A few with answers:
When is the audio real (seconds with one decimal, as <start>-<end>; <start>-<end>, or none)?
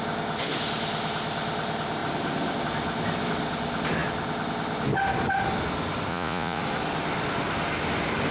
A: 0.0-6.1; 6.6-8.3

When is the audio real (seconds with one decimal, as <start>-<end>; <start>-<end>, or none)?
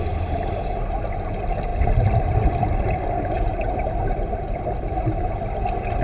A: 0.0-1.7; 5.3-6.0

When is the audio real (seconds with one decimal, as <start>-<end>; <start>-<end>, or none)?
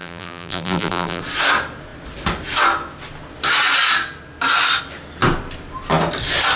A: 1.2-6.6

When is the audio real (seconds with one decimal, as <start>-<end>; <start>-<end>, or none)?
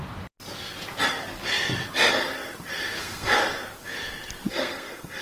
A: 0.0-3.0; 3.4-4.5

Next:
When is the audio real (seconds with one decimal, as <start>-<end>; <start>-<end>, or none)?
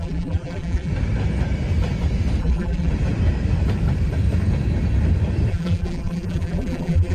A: 0.9-2.4; 2.9-5.5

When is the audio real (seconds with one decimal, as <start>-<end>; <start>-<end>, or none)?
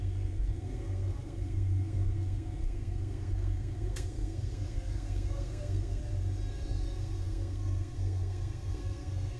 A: 6.0-6.5